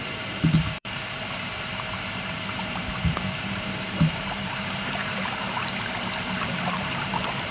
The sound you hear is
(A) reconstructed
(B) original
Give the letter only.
A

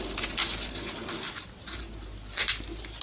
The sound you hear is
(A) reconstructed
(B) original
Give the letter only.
B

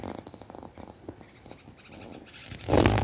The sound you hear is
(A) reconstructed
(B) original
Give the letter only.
B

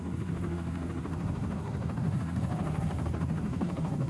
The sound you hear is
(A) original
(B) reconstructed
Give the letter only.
B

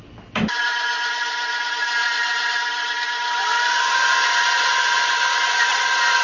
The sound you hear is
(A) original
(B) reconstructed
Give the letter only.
A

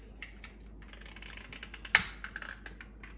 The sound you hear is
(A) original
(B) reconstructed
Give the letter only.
A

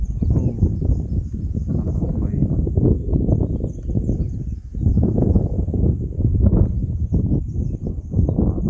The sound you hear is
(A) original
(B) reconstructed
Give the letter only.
A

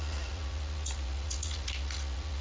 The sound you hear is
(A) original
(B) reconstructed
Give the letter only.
B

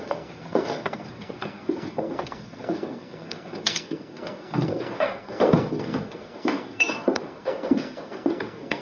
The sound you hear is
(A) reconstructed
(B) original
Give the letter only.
A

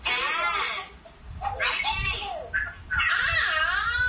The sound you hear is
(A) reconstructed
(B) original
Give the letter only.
B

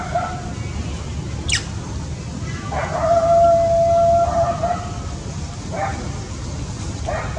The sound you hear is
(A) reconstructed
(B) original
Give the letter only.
B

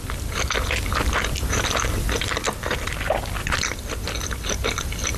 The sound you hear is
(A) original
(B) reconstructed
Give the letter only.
A